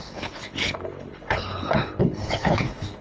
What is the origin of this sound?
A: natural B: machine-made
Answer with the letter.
B